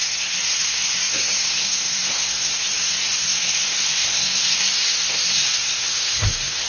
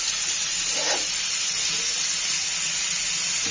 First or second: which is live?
second